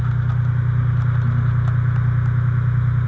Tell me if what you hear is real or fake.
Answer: real